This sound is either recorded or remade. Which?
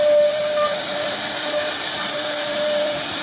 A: remade